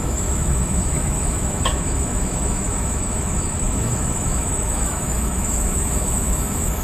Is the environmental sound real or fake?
fake